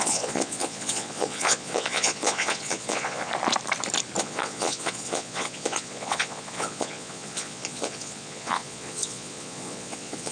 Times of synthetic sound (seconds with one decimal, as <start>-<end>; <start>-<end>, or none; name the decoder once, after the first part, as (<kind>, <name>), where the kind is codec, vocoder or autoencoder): 0.0-3.3 (vocoder, Vocos); 4.2-10.3